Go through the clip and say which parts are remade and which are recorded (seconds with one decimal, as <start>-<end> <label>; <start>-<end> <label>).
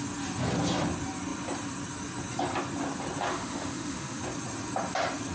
0.0-3.3 recorded; 3.3-4.2 remade; 4.2-5.3 recorded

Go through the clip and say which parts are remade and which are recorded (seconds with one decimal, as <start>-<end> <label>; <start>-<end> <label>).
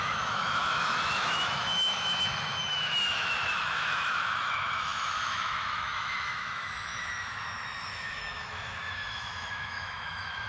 0.0-10.5 remade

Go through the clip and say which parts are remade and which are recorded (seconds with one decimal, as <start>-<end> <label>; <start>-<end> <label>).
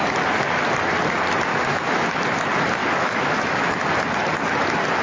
0.0-1.5 recorded; 1.5-2.2 remade; 2.2-2.8 recorded; 2.8-3.9 remade; 3.9-5.0 recorded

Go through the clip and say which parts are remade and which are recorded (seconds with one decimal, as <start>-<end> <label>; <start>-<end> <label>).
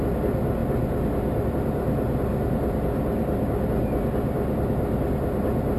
0.0-5.8 recorded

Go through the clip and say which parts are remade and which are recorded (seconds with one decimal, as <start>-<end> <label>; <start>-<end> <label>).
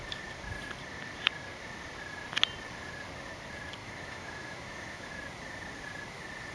0.0-3.8 recorded; 3.8-5.2 remade; 5.2-6.5 recorded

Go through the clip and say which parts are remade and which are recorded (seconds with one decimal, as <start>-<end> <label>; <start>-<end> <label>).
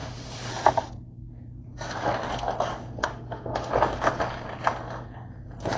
0.0-0.5 remade; 0.5-3.0 recorded; 3.0-3.7 remade; 3.7-5.8 recorded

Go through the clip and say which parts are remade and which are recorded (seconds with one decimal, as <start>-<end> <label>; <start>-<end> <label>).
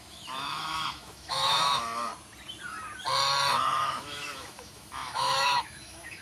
0.0-2.1 remade; 2.1-3.5 recorded; 3.5-6.2 remade